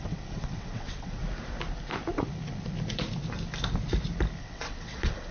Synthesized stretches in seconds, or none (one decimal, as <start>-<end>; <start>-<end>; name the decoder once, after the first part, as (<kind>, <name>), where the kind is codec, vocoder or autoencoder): 0.0-1.2 (vocoder, WaveNeXt); 4.4-5.3